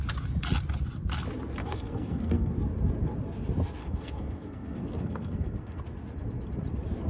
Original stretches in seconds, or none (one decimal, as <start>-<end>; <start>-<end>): 0.0-1.6; 2.5-3.8; 5.8-7.1